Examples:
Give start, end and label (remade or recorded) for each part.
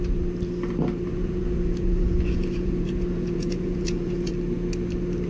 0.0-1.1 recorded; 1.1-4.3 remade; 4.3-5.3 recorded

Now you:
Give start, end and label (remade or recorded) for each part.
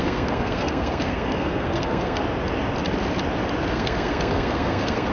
0.0-2.2 remade; 2.2-3.7 recorded; 3.7-5.1 remade